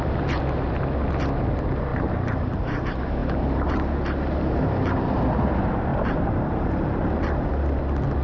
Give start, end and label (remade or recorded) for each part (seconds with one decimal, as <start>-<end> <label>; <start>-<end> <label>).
0.0-1.9 recorded; 1.9-2.7 remade; 2.7-3.2 recorded; 3.2-3.7 remade; 3.7-5.9 recorded; 5.9-7.5 remade; 7.5-8.2 recorded